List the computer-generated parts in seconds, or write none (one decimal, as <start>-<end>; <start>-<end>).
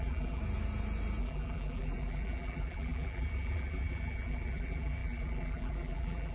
0.0-0.4; 1.2-6.3